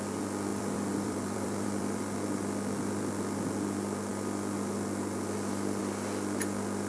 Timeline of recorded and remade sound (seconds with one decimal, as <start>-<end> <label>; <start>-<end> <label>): 0.0-0.5 recorded; 0.5-2.4 remade; 2.4-6.9 recorded